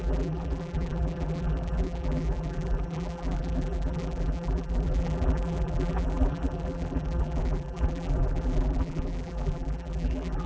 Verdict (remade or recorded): remade